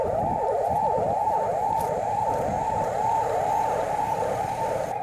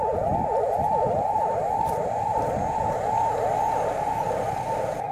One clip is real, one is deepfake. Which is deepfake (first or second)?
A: first